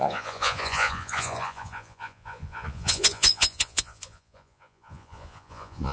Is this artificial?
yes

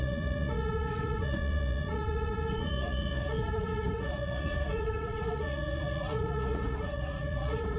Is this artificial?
yes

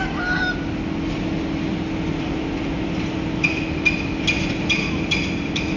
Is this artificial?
no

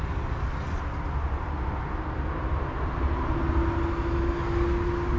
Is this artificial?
no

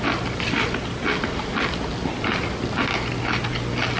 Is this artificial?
no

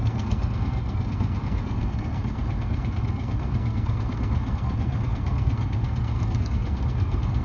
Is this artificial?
yes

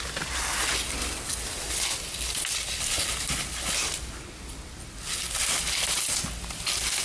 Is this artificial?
no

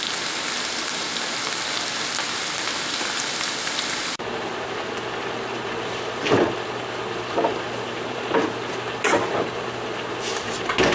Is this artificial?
yes